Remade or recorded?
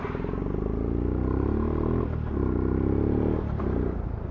recorded